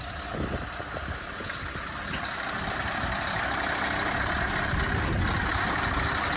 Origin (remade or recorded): recorded